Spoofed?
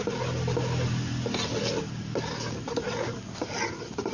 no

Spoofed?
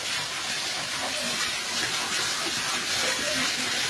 no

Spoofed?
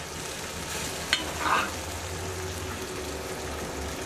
no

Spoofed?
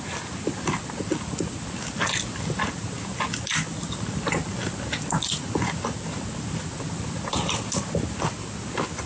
no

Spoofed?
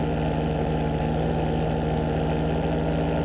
no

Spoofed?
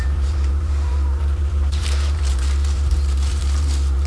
yes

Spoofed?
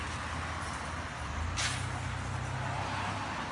no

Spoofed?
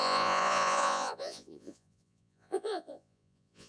yes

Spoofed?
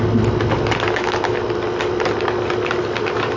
no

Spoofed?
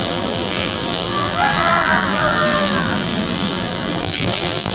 yes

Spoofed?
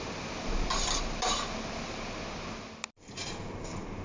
no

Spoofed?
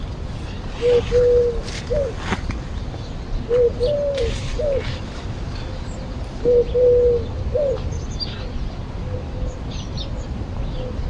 no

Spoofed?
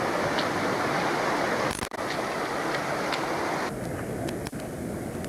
no